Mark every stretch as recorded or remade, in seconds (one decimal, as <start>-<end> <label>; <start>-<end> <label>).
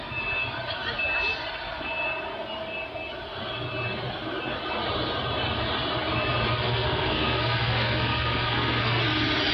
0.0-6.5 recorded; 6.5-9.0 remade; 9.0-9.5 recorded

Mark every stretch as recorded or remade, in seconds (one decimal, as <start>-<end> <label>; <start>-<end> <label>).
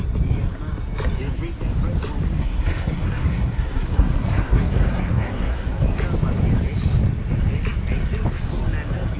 0.0-2.4 recorded; 2.4-5.8 remade; 5.8-9.2 recorded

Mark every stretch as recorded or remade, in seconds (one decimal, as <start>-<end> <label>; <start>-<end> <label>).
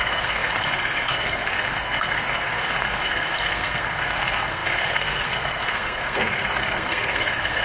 0.0-7.6 remade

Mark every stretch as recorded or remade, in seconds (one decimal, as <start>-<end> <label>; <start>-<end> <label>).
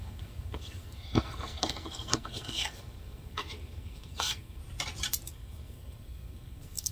0.0-4.6 remade; 4.6-5.3 recorded; 5.3-6.9 remade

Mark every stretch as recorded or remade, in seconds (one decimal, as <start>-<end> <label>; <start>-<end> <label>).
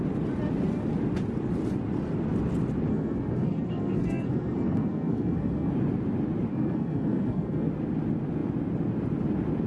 0.0-2.9 recorded; 2.9-5.7 remade; 5.7-6.5 recorded; 6.5-7.7 remade; 7.7-9.7 recorded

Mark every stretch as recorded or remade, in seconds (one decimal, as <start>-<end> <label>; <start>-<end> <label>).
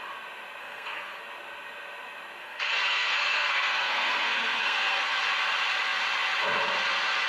0.0-0.6 recorded; 0.6-1.2 remade; 1.2-2.4 recorded; 2.4-5.2 remade; 5.2-7.3 recorded